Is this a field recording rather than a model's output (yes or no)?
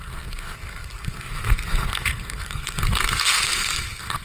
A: no